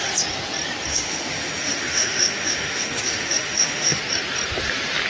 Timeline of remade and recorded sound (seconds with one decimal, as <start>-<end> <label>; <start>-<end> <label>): 0.0-0.9 recorded; 0.9-4.0 remade; 4.0-5.1 recorded